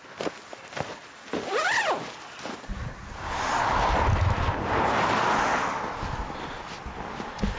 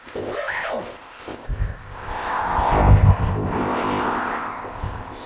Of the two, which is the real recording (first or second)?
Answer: first